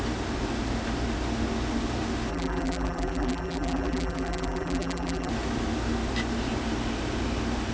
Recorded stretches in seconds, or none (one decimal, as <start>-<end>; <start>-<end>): 0.0-2.3; 5.3-7.7